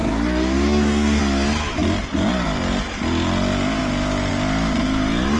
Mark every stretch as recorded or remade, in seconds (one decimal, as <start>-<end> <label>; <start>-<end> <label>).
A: 0.0-1.2 remade; 1.2-5.4 recorded